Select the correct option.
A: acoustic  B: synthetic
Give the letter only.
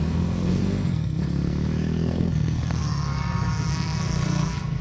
B